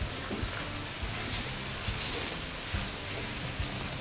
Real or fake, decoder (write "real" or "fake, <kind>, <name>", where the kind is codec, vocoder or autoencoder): real